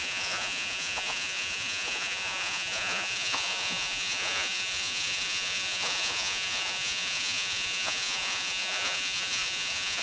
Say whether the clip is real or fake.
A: fake